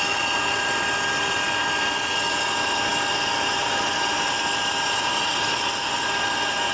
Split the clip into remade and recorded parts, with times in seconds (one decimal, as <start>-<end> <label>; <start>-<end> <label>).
0.0-6.7 recorded